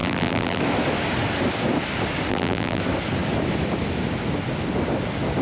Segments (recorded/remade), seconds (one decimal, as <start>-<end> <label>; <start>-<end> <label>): 0.0-0.6 remade; 0.6-2.3 recorded; 2.3-2.8 remade; 2.8-5.4 recorded